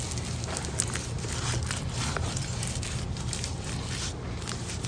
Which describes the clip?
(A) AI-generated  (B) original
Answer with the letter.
B